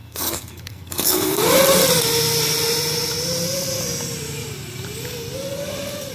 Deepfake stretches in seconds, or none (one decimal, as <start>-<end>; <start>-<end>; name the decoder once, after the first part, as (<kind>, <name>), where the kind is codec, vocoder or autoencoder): 0.0-1.4 (codec, SNAC)